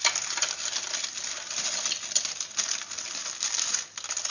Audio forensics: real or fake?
real